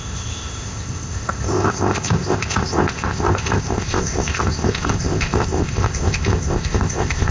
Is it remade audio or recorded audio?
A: remade